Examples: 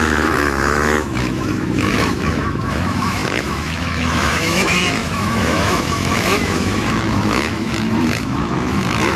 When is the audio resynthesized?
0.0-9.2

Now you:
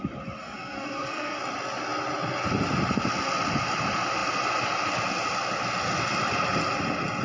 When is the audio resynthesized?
0.4-1.4

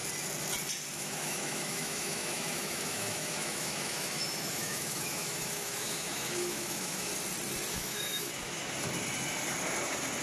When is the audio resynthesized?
0.9-7.1; 7.7-8.6

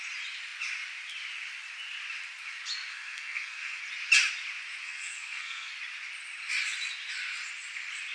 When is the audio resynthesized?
2.9-3.8; 4.8-5.7

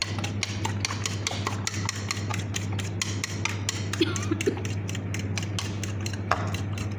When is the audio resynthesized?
none

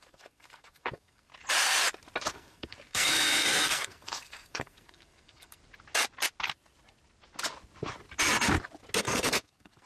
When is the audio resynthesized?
0.0-1.3; 2.3-5.6; 9.0-9.9